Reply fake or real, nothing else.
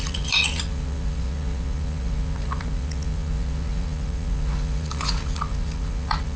fake